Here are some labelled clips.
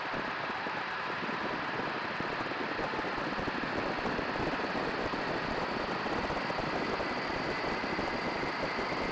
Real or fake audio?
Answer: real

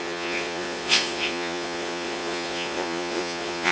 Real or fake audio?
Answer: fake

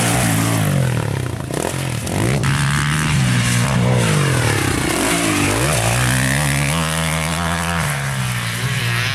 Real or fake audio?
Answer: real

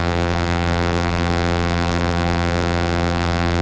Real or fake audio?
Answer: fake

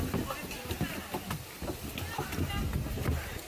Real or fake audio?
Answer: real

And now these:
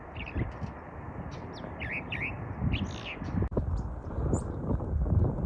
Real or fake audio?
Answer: real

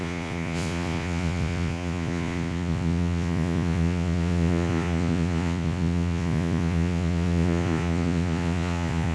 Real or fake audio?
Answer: fake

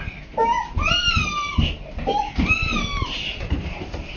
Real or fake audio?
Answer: real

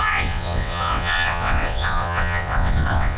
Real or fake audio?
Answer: fake